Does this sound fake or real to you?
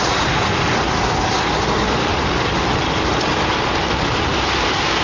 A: real